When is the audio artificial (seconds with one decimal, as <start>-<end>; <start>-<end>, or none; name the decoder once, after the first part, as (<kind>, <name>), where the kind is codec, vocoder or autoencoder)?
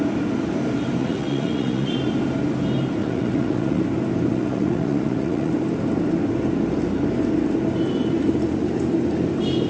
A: 1.0-1.9 (vocoder, Vocos); 3.0-3.8; 4.3-5.5